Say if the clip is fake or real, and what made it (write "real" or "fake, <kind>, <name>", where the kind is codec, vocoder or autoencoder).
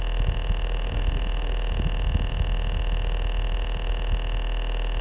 real